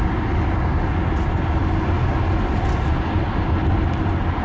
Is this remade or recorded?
recorded